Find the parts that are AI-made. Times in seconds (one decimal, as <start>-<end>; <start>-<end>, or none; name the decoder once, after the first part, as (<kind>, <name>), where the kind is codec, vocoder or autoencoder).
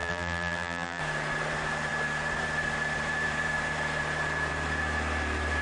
0.0-1.0 (vocoder, BigVGAN v2)